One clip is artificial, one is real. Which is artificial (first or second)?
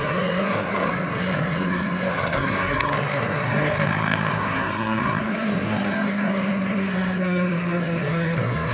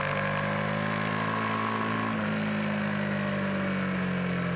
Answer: first